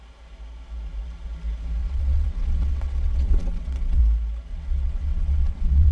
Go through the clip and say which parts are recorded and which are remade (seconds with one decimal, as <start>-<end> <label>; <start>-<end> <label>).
0.0-1.8 recorded; 1.8-4.0 remade; 4.0-4.5 recorded; 4.5-5.9 remade